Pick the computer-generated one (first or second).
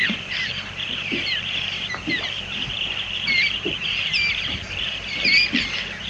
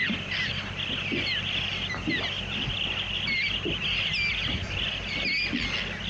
first